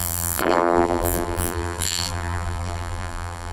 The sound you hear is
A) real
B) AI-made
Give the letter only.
B